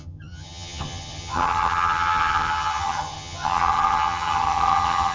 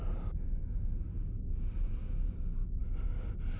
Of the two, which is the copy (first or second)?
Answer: first